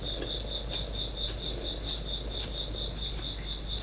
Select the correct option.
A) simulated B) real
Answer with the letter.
B